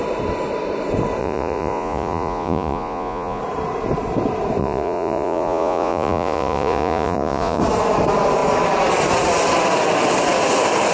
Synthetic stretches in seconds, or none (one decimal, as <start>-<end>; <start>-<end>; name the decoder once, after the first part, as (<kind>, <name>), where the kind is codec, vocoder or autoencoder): 1.2-3.4 (vocoder, Vocos); 4.6-7.6